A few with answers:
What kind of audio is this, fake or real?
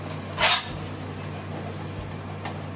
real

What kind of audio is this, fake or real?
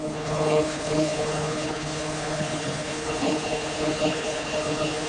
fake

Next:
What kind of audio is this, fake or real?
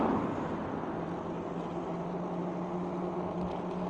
real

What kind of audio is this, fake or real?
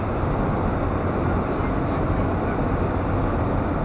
real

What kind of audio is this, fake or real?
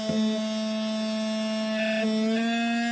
real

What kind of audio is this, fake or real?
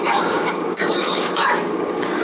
fake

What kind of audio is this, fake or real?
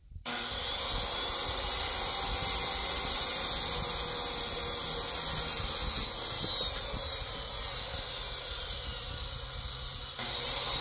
real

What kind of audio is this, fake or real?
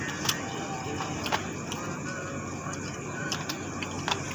real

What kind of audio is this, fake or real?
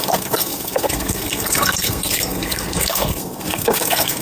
fake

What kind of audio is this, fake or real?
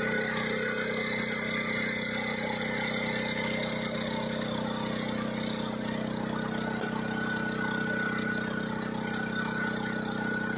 real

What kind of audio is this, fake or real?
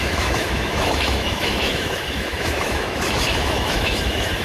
fake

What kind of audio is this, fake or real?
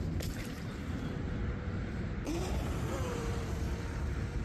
fake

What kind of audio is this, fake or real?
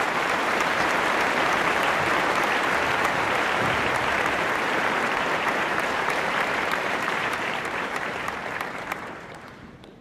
fake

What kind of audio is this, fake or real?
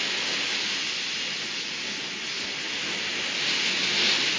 real